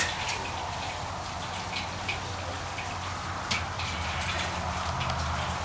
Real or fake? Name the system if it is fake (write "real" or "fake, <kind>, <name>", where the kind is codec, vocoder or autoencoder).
real